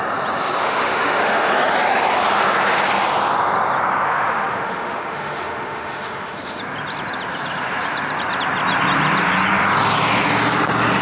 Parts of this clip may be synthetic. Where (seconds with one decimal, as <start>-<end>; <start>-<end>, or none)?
0.6-1.5; 4.0-6.6